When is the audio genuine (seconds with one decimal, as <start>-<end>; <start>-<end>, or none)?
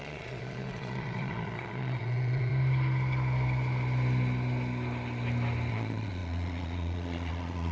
2.5-5.7